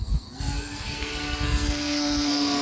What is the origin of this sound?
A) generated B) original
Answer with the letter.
A